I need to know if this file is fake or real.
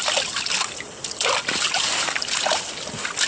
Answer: real